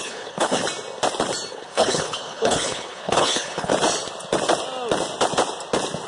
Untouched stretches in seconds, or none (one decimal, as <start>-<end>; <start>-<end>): 0.6-1.5; 3.7-6.1